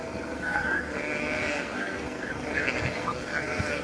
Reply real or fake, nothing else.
fake